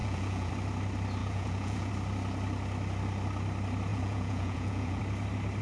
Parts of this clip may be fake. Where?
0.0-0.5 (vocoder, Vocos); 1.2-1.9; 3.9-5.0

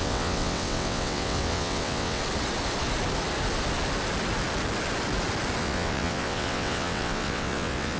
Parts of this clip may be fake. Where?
0.0-2.2 (vocoder, WaveNeXt); 5.6-8.0

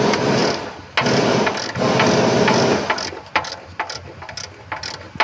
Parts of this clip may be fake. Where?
none

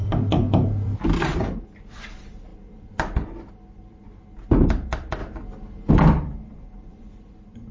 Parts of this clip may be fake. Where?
0.0-5.2 (vocoder, BigVGAN v2); 5.9-7.7

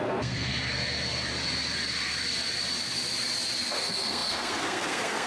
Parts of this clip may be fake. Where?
0.0-0.5 (codec, SNAC); 3.7-5.3

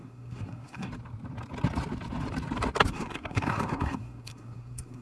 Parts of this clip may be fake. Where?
0.0-0.9 (codec, SNAC); 2.9-5.0